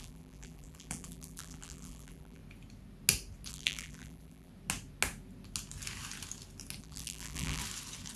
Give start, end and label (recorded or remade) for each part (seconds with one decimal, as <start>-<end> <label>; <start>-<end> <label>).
0.0-2.4 remade; 2.4-3.5 recorded; 3.5-4.5 remade; 4.5-6.8 recorded; 6.8-7.6 remade; 7.6-8.2 recorded